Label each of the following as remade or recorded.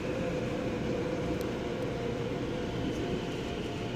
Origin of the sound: recorded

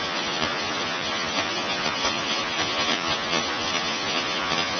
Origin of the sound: remade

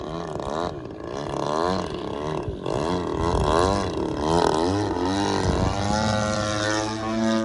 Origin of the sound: recorded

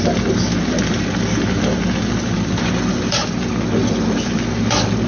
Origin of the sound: recorded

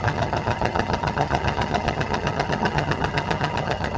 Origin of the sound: remade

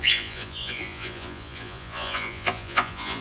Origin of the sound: remade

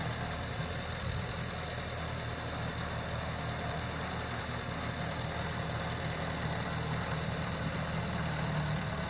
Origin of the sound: recorded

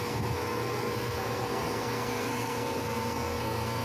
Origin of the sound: remade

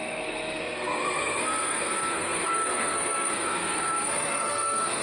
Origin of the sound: remade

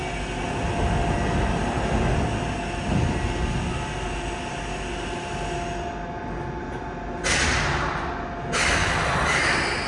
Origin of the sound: recorded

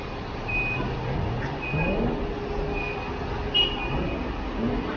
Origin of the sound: recorded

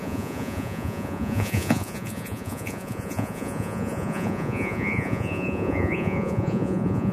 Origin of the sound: remade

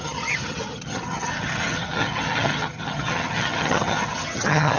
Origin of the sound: remade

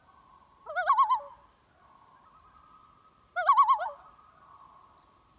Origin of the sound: recorded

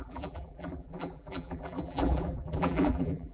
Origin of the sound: remade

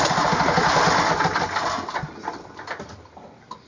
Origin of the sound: recorded